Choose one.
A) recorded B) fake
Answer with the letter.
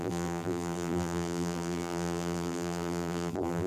B